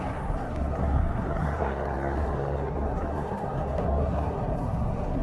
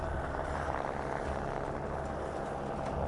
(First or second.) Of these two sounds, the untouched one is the second